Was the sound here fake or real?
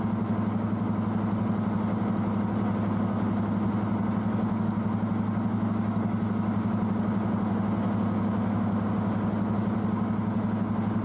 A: real